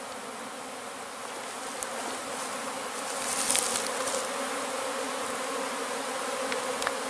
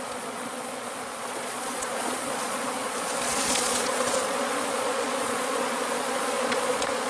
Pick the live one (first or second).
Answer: first